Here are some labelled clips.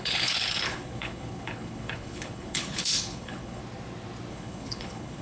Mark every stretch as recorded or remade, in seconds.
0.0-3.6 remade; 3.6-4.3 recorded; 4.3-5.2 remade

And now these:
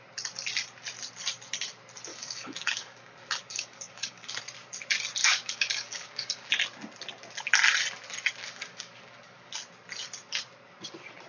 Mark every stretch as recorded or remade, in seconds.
0.0-2.1 recorded; 2.1-4.4 remade; 4.4-5.2 recorded; 5.2-6.5 remade; 6.5-8.4 recorded; 8.4-9.5 remade; 9.5-11.3 recorded

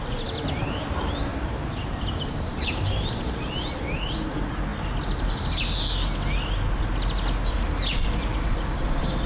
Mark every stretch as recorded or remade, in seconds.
0.0-1.3 recorded; 1.3-3.5 remade; 3.5-9.3 recorded

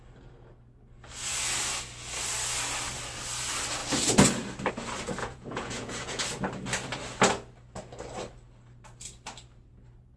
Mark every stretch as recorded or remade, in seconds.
0.0-5.2 recorded; 5.2-6.2 remade; 6.2-10.2 recorded

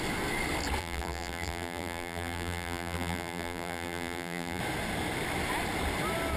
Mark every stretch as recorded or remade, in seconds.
0.0-0.8 recorded; 0.8-4.6 remade; 4.6-6.4 recorded

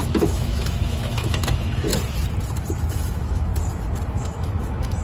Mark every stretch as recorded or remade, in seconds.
0.0-1.9 remade; 1.9-2.9 recorded; 2.9-3.5 remade; 3.5-4.1 recorded; 4.1-5.0 remade

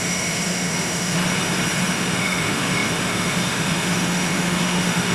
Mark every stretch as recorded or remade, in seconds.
0.0-1.2 remade; 1.2-1.9 recorded; 1.9-5.1 remade